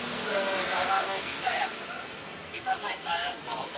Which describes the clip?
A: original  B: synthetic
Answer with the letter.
B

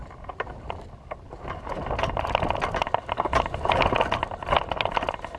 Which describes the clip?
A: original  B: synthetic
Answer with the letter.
A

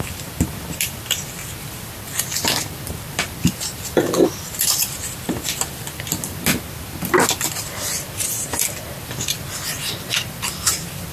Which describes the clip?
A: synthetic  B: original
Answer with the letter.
A